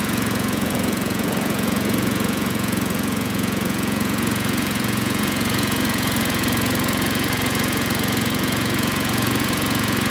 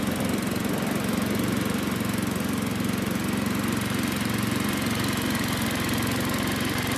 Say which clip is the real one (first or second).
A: second